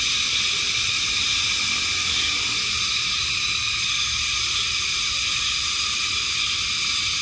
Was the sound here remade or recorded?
recorded